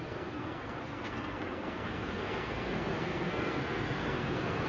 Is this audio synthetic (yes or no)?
yes